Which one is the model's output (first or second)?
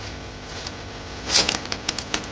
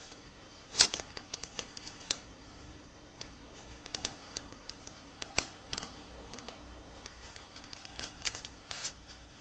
second